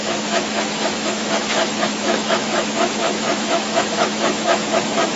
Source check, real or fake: fake